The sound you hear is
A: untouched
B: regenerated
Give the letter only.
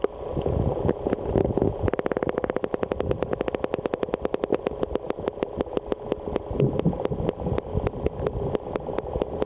A